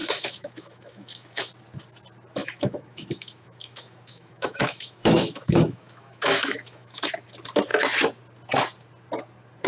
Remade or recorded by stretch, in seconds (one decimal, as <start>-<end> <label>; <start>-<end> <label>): 0.0-1.5 remade; 1.5-2.4 recorded; 2.4-7.1 remade; 7.1-9.7 recorded